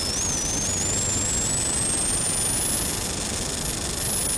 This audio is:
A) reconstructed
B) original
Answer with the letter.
B